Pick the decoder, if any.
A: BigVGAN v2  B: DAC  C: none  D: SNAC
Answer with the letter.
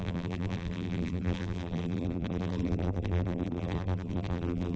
A